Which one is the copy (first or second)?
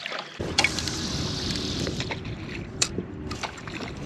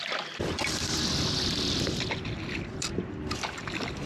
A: first